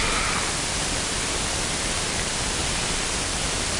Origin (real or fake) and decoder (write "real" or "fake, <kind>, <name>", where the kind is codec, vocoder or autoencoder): real